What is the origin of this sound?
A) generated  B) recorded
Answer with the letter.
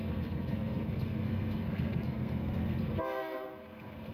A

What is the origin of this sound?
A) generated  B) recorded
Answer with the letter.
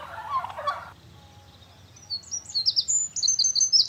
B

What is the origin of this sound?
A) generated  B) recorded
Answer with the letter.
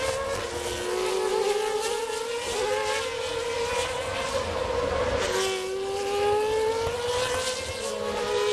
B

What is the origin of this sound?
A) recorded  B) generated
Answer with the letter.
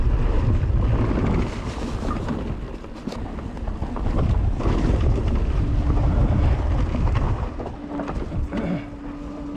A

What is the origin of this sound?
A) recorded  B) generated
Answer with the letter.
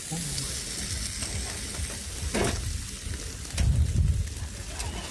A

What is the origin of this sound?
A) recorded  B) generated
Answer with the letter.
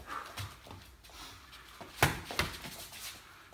A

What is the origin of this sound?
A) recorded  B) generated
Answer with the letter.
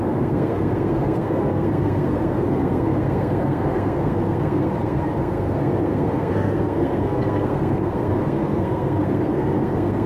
B